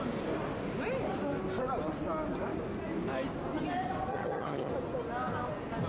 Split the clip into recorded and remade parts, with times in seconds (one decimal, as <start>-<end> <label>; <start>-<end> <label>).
0.0-4.1 recorded; 4.1-4.7 remade; 4.7-5.9 recorded